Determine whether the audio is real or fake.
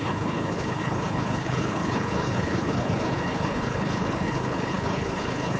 fake